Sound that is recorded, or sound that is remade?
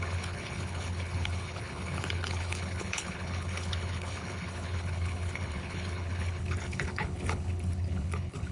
remade